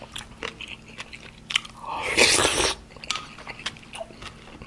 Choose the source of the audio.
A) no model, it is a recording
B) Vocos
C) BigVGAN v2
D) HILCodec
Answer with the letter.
A